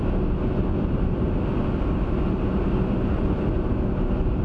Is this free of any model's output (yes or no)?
yes